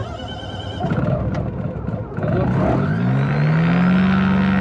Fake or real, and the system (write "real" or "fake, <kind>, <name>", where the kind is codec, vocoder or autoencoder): real